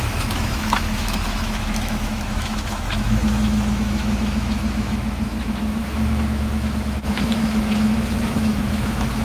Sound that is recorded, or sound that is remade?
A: remade